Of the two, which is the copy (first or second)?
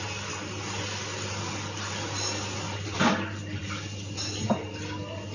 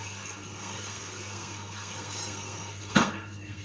second